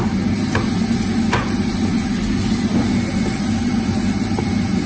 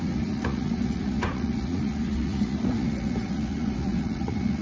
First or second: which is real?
first